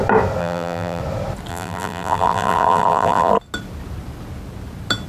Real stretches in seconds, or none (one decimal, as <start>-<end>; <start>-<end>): 0.0-0.4; 1.0-1.5; 3.3-5.1